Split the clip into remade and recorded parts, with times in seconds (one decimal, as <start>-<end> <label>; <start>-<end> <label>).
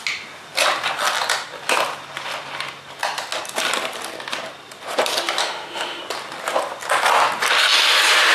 0.0-5.4 recorded; 5.4-6.0 remade; 6.0-8.3 recorded